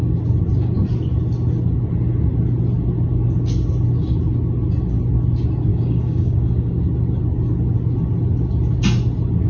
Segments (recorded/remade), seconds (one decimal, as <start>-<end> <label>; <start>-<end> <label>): 0.0-5.7 recorded; 5.7-6.8 remade; 6.8-9.5 recorded